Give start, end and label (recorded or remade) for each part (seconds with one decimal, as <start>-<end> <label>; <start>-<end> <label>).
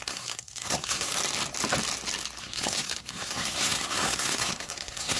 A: 0.0-1.1 remade; 1.1-2.4 recorded; 2.4-5.2 remade